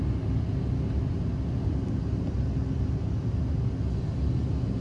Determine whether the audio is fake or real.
real